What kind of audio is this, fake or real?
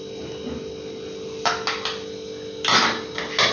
real